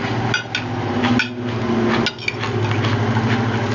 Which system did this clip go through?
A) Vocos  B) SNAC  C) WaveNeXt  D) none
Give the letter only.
D